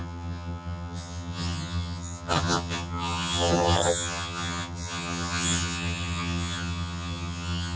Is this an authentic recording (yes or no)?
no